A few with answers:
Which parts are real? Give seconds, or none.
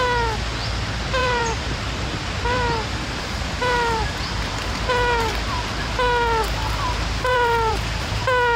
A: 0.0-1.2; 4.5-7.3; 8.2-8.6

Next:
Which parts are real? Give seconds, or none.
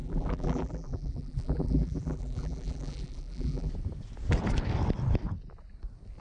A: 3.7-6.2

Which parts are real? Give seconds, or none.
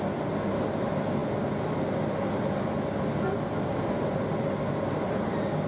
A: 0.0-5.7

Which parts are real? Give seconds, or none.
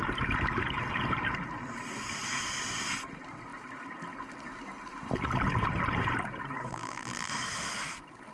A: 0.0-6.7; 7.3-8.3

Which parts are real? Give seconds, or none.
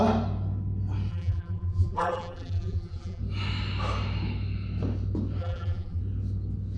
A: 0.0-1.1; 3.2-5.4; 6.0-6.8